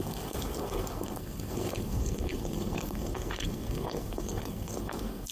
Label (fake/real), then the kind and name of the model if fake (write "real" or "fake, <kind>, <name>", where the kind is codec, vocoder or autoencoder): fake, codec, SNAC